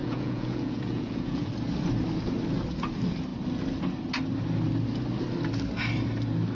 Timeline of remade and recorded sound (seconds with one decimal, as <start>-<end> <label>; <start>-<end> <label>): 0.0-1.5 remade; 1.5-6.5 recorded